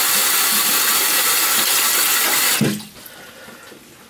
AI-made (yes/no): no